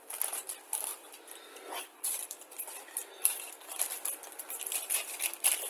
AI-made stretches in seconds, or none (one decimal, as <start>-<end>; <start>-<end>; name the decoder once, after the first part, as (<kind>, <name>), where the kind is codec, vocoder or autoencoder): 0.9-3.8 (vocoder, BigVGAN v2)